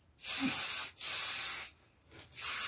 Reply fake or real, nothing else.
real